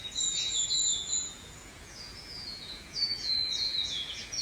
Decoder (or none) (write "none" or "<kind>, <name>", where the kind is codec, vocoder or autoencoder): vocoder, Vocos